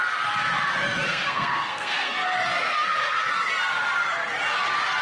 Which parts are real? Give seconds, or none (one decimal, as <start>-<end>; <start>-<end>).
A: 0.0-1.1; 3.5-5.0